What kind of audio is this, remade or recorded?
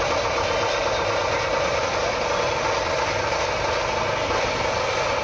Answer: recorded